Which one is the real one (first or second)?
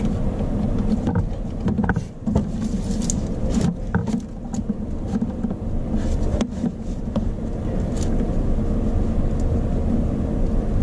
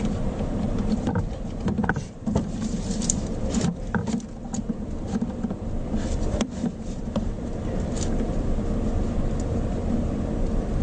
first